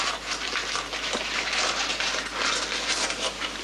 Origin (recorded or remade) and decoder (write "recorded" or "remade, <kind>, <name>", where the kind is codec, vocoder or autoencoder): recorded